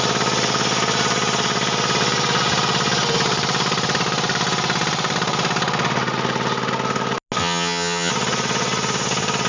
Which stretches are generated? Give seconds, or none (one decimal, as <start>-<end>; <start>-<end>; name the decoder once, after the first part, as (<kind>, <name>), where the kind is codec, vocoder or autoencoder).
7.4-8.1 (vocoder, HiFi-GAN)